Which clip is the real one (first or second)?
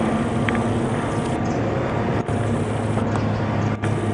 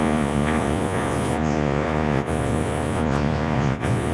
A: first